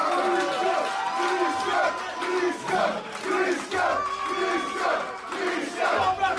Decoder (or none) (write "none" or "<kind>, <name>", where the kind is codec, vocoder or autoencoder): none